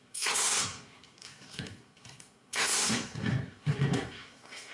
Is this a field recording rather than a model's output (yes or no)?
no